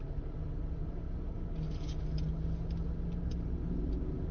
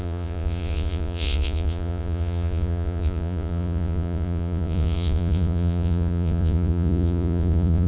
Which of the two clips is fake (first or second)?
second